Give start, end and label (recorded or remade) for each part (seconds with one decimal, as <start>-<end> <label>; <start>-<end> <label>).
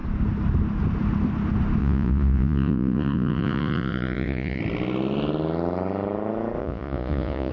0.0-1.8 recorded; 1.8-4.6 remade; 4.6-6.6 recorded; 6.6-7.5 remade